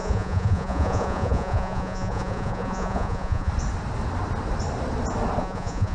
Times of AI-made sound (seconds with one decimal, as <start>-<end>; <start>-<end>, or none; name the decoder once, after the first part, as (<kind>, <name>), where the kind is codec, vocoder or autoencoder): 0.0-3.5 (vocoder, Vocos); 5.4-5.9